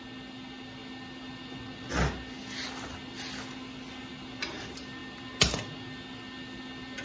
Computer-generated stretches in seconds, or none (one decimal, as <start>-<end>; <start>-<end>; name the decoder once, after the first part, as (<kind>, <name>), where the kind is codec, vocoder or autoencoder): none